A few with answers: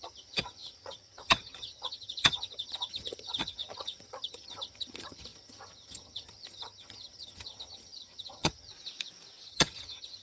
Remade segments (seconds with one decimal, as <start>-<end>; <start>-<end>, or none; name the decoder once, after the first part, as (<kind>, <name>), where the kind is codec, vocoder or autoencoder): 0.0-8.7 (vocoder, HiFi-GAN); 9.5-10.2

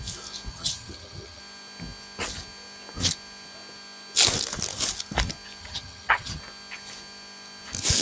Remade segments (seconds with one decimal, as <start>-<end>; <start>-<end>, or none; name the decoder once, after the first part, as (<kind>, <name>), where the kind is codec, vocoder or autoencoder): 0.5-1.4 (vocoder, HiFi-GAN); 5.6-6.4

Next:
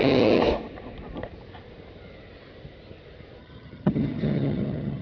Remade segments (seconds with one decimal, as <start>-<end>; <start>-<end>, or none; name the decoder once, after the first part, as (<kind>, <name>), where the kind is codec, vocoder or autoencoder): 0.0-0.4 (vocoder, HiFi-GAN); 3.4-5.0

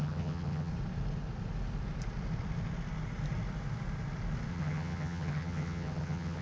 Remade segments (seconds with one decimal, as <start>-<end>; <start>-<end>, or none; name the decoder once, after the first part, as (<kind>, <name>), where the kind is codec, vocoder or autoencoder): 0.0-0.7 (vocoder, HiFi-GAN); 4.5-6.4

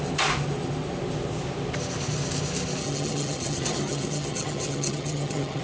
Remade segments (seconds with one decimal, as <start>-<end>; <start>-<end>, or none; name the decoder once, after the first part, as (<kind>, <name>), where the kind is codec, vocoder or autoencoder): 2.8-5.6 (vocoder, HiFi-GAN)